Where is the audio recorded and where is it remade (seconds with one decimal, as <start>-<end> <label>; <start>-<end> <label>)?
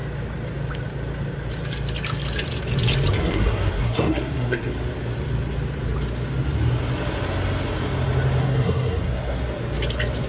0.0-3.2 recorded; 3.2-4.7 remade; 4.7-8.4 recorded; 8.4-9.4 remade; 9.4-10.3 recorded